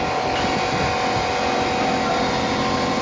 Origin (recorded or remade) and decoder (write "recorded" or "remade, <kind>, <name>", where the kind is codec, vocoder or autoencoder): recorded